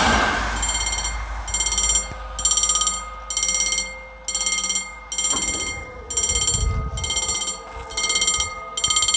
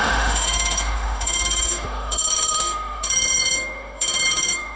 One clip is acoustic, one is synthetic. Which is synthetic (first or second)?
second